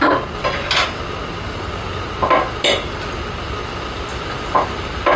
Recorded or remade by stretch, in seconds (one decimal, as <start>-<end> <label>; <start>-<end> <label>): 0.0-5.2 recorded